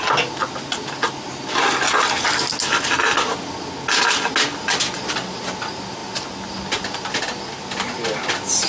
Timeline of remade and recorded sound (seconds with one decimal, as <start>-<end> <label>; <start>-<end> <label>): 0.0-8.7 recorded